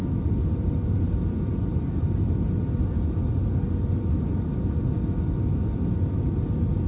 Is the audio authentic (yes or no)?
yes